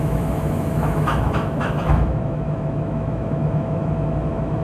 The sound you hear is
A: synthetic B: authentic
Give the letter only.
A